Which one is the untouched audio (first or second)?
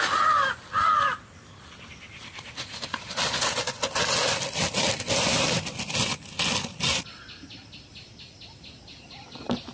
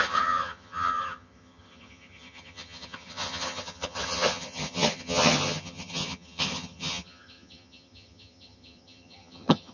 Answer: first